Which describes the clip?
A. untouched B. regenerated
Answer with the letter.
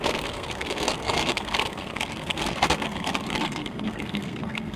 B